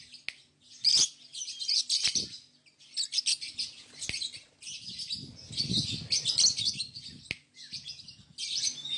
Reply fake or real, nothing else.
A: real